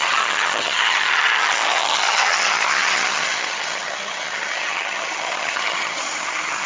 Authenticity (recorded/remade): remade